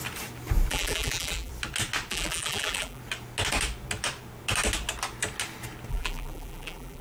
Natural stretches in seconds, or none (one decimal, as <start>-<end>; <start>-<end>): 0.0-0.7; 1.5-2.1; 3.0-5.9